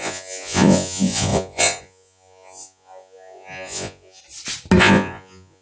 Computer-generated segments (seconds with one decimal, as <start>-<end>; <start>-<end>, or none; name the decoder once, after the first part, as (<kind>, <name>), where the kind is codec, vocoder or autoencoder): 0.0-4.2 (vocoder, Vocos); 4.8-5.6